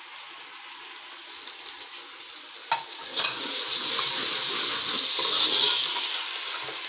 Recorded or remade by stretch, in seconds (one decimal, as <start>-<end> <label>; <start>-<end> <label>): 0.0-3.1 recorded; 3.1-3.9 remade; 3.9-6.9 recorded